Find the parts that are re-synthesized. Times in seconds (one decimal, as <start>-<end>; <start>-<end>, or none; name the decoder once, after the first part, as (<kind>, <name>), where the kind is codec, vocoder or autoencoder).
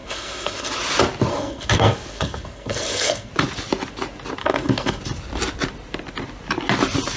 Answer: 0.0-0.7 (codec, SNAC); 1.3-3.3; 4.4-5.0